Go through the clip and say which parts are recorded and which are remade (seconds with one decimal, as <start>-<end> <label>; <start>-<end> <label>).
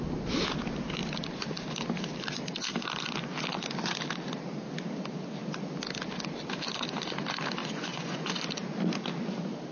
0.0-7.6 recorded; 7.6-8.3 remade; 8.3-9.7 recorded